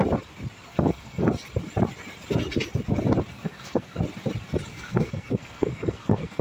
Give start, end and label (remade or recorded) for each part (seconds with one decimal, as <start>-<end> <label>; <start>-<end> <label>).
0.0-0.7 recorded; 0.7-1.3 remade; 1.3-3.3 recorded; 3.3-4.0 remade; 4.0-4.7 recorded; 4.7-6.4 remade